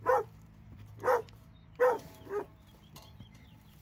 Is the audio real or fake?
fake